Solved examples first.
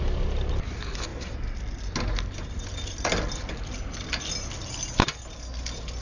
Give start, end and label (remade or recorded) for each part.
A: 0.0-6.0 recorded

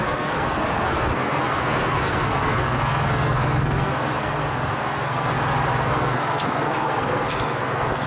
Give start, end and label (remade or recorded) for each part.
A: 0.0-5.3 remade; 5.3-5.8 recorded; 5.8-8.1 remade